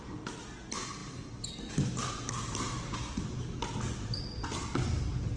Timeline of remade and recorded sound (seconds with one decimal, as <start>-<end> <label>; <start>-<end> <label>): 0.0-5.4 recorded